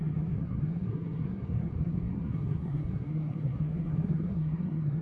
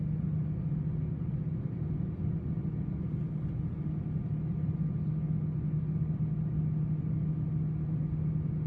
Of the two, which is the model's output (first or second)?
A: first